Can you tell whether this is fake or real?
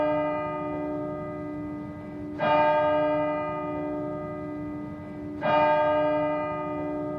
real